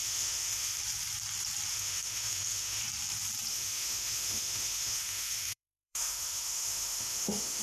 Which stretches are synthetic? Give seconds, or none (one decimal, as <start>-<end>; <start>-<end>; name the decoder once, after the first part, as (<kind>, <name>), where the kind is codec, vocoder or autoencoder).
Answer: 0.0-0.8 (autoencoder, DAC-VAE); 1.7-2.8; 3.5-7.6